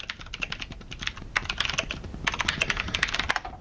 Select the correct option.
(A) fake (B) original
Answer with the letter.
B